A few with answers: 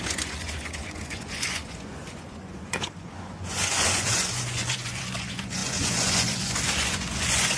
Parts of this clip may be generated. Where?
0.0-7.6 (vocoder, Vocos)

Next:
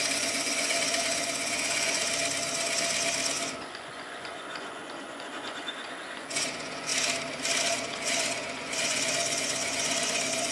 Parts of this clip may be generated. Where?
0.0-2.0 (vocoder, Vocos); 3.3-6.9; 7.6-10.5

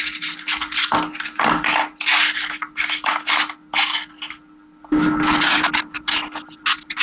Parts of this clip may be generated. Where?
none